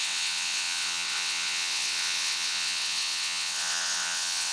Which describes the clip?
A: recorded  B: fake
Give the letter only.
B